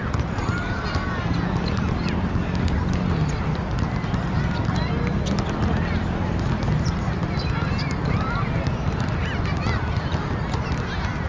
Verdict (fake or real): real